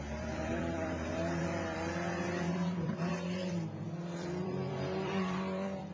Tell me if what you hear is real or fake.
fake